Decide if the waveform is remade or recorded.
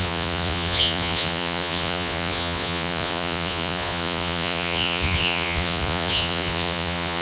remade